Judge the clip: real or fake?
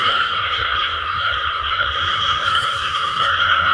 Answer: fake